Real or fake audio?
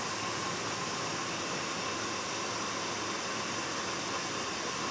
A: real